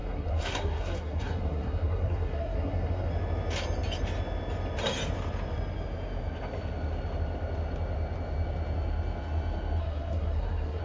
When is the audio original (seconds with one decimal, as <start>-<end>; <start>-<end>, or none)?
3.1-9.8